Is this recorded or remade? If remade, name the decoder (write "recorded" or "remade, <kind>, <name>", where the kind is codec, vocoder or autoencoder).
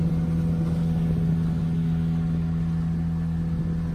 recorded